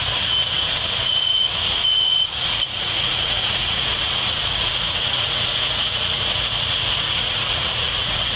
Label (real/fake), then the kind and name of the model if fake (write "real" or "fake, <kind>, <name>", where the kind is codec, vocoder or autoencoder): fake, vocoder, Vocos